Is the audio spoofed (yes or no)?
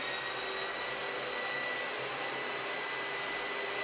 no